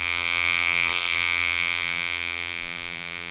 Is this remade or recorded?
remade